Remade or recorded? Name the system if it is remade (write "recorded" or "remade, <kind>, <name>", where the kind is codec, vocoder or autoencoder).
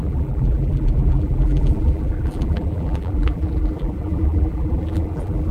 remade, vocoder, BigVGAN v2